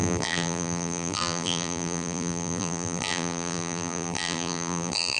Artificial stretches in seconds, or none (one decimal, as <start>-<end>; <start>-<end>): 0.0-5.2